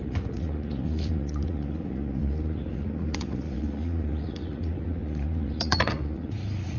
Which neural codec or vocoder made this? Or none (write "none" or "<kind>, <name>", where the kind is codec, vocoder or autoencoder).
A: vocoder, Vocos